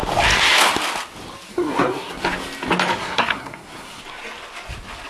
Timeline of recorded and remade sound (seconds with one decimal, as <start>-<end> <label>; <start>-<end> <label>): 0.0-1.5 recorded; 1.5-2.2 remade; 2.2-3.0 recorded; 3.0-4.0 remade; 4.0-5.1 recorded